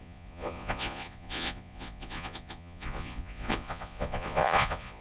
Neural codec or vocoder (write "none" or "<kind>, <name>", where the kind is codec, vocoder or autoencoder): vocoder, Vocos